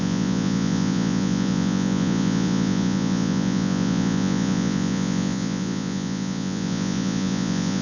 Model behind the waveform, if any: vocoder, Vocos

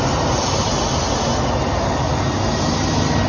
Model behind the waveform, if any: none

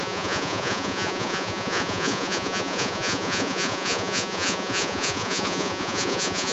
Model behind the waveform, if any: vocoder, Vocos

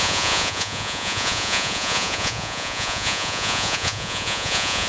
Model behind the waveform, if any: vocoder, Vocos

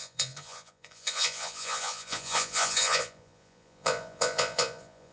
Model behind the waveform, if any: vocoder, Vocos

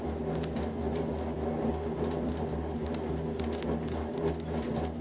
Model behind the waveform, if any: none